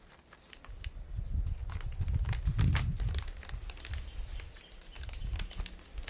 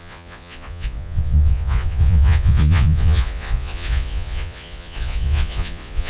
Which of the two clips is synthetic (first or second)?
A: second